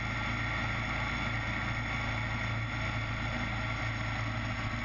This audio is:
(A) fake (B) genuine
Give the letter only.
B